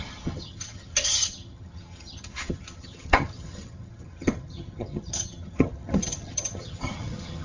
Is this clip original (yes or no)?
no